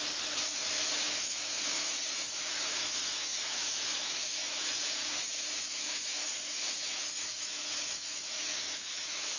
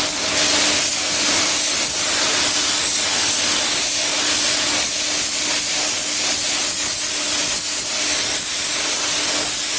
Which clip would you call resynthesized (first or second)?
first